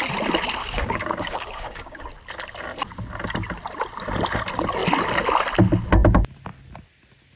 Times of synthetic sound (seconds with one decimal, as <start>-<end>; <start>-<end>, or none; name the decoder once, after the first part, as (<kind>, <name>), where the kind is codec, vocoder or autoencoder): 0.6-2.0 (codec, DAC)